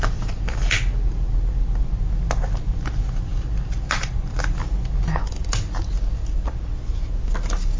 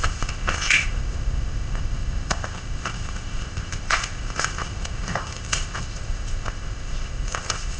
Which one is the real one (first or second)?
first